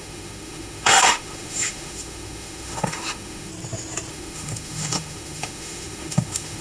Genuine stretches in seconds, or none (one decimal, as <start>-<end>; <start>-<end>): 3.5-4.1